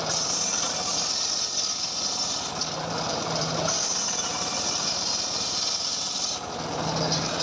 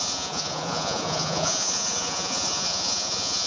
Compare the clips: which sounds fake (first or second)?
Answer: second